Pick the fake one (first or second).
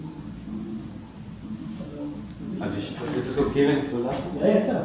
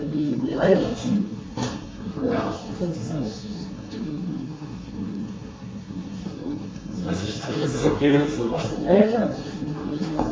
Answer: second